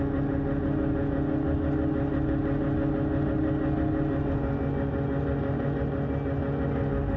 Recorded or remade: recorded